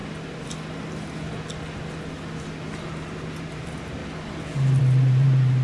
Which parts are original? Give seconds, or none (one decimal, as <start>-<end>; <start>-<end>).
0.0-3.4; 4.0-4.8